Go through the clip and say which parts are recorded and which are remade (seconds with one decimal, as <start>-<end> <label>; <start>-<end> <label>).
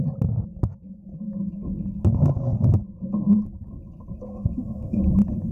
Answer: 0.0-4.3 recorded; 4.3-5.0 remade; 5.0-5.5 recorded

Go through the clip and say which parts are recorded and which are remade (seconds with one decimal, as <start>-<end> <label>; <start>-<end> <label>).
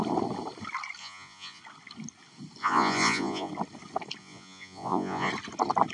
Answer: 0.0-1.0 recorded; 1.0-1.6 remade; 1.6-2.6 recorded; 2.6-3.5 remade; 3.5-4.2 recorded; 4.2-5.3 remade; 5.3-5.9 recorded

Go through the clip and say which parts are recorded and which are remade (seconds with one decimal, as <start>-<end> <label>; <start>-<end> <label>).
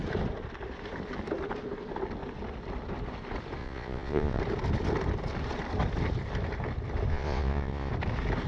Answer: 0.0-3.6 recorded; 3.6-4.4 remade; 4.4-7.1 recorded; 7.1-7.9 remade; 7.9-8.5 recorded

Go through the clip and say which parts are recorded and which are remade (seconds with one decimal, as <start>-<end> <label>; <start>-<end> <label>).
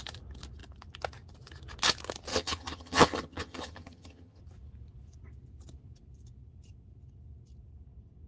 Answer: 0.0-2.3 recorded; 2.3-4.4 remade; 4.4-8.3 recorded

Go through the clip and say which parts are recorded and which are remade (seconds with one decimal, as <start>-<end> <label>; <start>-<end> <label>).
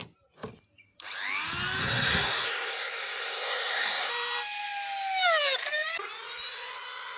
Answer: 0.0-1.8 recorded; 1.8-4.1 remade; 4.1-7.2 recorded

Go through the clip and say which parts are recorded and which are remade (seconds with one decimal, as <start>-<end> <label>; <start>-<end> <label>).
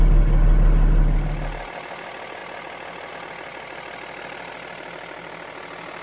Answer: 0.0-6.0 recorded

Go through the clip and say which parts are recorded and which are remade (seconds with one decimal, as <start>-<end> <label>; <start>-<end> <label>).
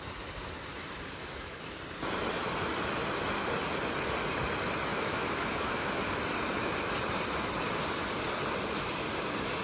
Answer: 0.0-0.7 recorded; 0.7-1.8 remade; 1.8-4.9 recorded; 4.9-6.2 remade; 6.2-9.6 recorded